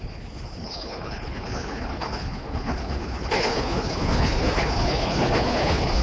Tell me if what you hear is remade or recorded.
remade